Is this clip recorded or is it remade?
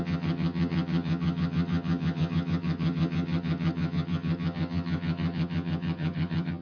remade